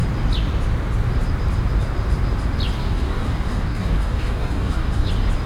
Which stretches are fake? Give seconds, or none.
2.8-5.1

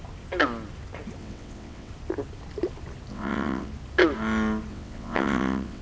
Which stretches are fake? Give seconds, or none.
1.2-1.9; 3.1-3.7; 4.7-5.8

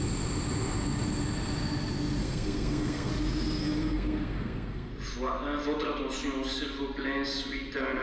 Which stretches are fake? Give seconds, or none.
2.2-3.1; 3.6-4.9

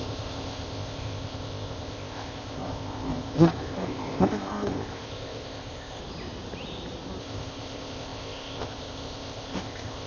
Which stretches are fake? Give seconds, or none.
0.0-6.0; 7.2-10.1

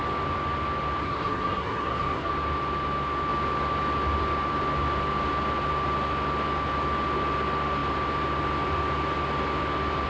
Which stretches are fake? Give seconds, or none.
1.0-2.3

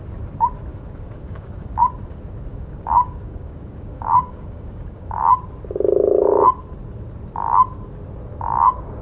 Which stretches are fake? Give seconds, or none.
0.7-1.9; 2.5-5.2

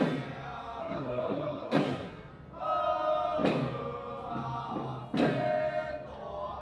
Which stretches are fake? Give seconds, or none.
0.8-2.3